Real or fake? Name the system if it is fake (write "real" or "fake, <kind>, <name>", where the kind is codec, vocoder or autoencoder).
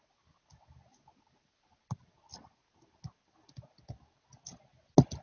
real